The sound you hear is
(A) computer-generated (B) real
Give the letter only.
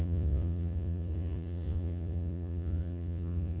A